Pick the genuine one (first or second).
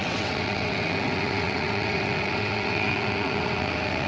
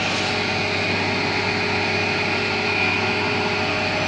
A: second